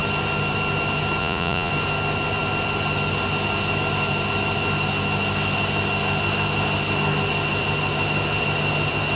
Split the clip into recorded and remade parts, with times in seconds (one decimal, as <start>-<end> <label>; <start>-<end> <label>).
0.0-1.2 recorded; 1.2-1.7 remade; 1.7-9.2 recorded